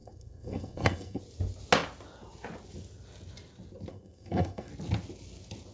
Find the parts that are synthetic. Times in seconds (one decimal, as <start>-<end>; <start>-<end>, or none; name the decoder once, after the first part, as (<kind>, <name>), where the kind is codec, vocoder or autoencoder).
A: 0.0-1.2 (codec, SNAC); 3.9-4.7